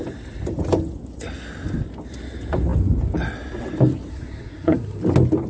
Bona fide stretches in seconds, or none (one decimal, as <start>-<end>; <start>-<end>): 0.0-4.1; 5.0-5.5